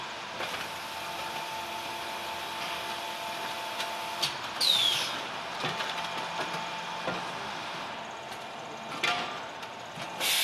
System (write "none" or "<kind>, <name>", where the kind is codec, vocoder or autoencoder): none